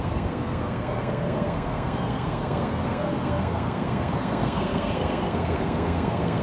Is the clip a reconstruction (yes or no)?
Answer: yes